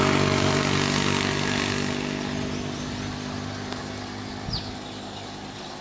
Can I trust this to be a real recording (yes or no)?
yes